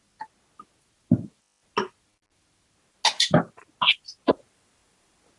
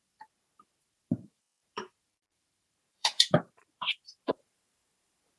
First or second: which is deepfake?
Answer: second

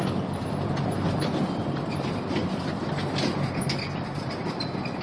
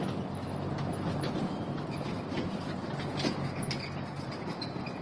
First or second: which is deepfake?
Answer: first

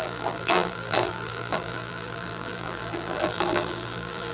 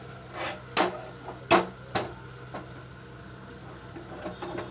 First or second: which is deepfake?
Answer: first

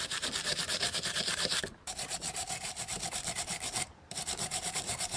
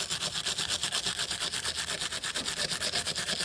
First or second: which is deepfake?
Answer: first